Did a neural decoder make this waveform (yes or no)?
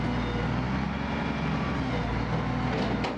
no